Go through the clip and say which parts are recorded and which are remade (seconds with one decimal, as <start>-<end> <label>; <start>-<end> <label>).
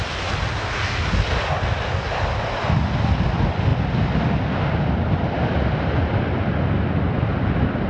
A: 0.0-7.9 recorded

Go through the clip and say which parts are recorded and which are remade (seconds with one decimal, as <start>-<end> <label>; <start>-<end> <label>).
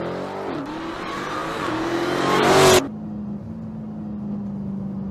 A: 0.0-5.1 recorded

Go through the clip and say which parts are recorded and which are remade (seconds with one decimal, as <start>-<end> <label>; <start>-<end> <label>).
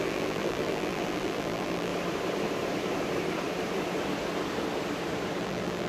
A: 0.0-1.9 remade; 1.9-5.4 recorded; 5.4-5.9 remade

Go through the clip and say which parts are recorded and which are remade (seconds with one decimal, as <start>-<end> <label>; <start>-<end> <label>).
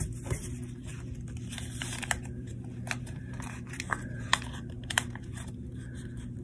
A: 0.0-0.9 remade; 0.9-1.5 recorded; 1.5-2.5 remade; 2.5-3.0 recorded; 3.0-6.4 remade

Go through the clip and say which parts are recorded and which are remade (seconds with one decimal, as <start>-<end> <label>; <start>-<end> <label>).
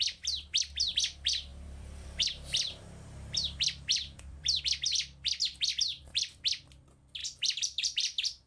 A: 0.0-1.5 recorded; 1.5-4.6 remade; 4.6-7.2 recorded; 7.2-8.5 remade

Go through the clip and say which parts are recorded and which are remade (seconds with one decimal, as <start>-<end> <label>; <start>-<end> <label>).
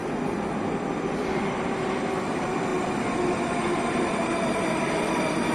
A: 0.0-5.5 remade